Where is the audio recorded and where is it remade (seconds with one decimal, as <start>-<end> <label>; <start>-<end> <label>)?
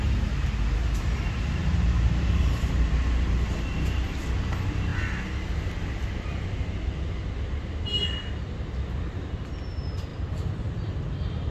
0.0-0.8 recorded; 0.8-2.9 remade; 2.9-11.5 recorded